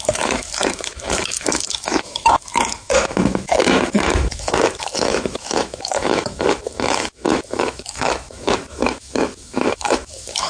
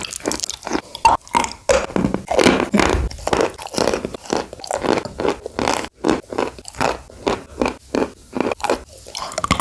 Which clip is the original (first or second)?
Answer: second